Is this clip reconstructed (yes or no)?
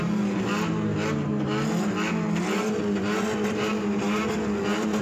no